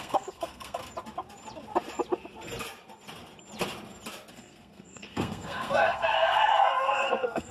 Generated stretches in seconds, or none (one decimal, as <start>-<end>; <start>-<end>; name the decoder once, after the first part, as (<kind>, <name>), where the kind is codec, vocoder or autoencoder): 0.0-0.8 (codec, SNAC); 4.3-7.5